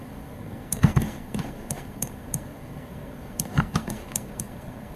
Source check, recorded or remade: remade